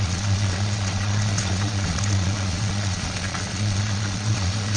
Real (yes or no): no